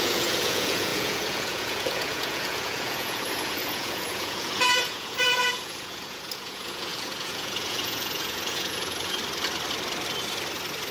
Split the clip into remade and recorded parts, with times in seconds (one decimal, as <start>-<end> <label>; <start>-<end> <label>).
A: 0.0-9.2 remade; 9.2-10.9 recorded